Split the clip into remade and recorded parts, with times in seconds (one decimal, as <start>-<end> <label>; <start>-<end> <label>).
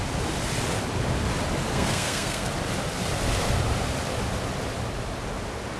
0.0-1.7 recorded; 1.7-2.5 remade; 2.5-5.8 recorded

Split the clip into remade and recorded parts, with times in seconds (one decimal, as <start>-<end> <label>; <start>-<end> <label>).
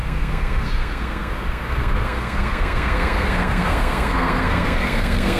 0.0-5.4 remade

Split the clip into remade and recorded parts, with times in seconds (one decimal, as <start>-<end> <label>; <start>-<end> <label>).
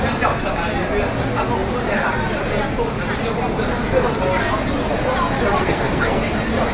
0.0-5.6 recorded; 5.6-6.2 remade; 6.2-6.7 recorded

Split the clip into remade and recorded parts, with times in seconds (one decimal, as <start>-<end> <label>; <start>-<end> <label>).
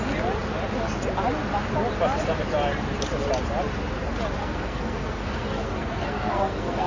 0.0-4.4 recorded; 4.4-6.9 remade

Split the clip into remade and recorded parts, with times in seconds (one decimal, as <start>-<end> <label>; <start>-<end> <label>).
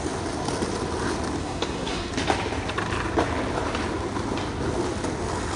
0.0-1.4 recorded; 1.4-2.1 remade; 2.1-5.6 recorded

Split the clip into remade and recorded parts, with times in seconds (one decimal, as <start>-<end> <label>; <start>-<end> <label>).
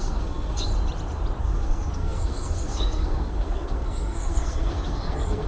0.0-0.7 remade; 0.7-1.4 recorded; 1.4-5.5 remade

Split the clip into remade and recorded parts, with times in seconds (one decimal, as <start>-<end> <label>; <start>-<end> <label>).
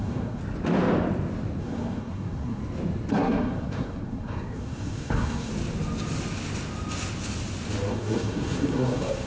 0.0-0.4 remade; 0.4-1.6 recorded; 1.6-2.6 remade; 2.6-3.1 recorded; 3.1-5.5 remade; 5.5-7.9 recorded; 7.9-9.3 remade